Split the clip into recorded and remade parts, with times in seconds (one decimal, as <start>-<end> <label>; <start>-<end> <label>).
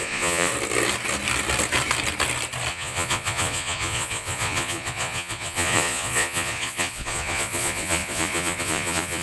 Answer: 0.0-0.5 remade; 0.5-2.7 recorded; 2.7-9.2 remade